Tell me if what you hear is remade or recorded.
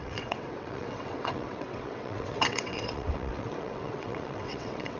remade